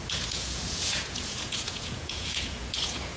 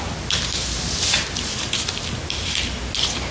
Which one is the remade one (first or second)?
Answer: first